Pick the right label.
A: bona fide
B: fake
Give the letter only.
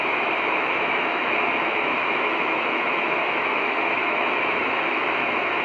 B